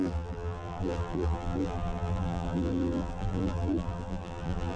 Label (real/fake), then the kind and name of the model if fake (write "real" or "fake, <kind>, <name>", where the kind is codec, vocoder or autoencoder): fake, vocoder, BigVGAN v2